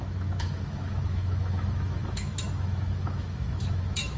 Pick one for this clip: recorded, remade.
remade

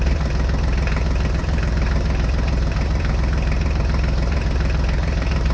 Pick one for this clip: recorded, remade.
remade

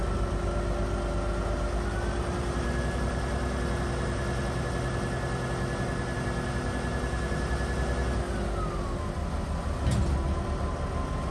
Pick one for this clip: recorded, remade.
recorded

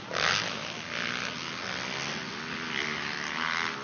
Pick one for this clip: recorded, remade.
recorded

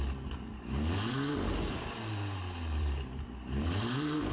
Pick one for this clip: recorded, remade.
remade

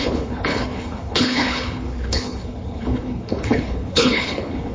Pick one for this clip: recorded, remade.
remade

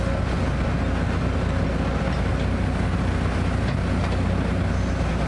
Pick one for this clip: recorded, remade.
recorded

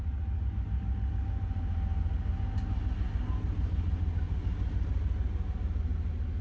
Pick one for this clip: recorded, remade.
recorded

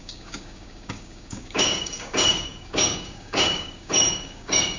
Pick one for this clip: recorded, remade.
remade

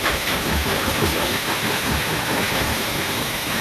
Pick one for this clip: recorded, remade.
remade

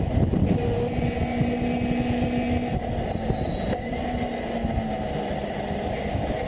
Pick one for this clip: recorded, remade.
recorded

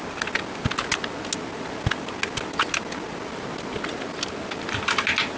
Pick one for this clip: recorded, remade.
recorded